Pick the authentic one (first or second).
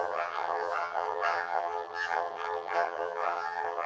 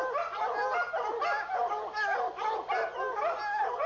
second